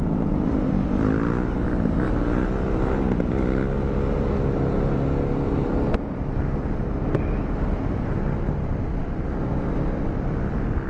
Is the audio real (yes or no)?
yes